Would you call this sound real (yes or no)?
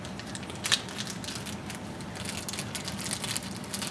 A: yes